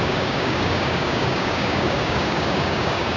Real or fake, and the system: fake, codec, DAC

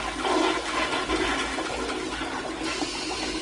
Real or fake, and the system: real